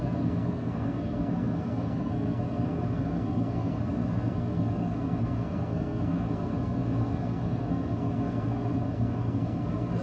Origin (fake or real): fake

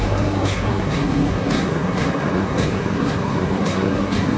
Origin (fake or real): fake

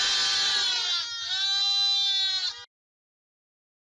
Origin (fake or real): real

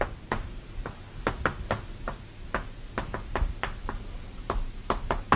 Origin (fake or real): real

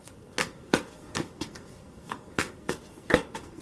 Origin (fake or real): fake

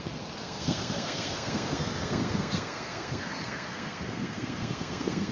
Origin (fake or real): fake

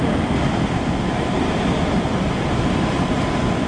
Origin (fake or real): real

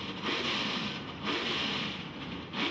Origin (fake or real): real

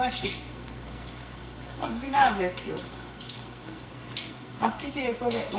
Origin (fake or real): fake